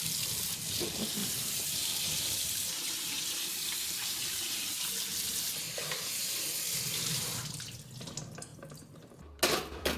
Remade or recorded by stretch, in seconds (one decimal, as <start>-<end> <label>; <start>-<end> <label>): 0.0-1.2 recorded; 1.2-4.9 remade; 4.9-8.5 recorded; 8.5-10.0 remade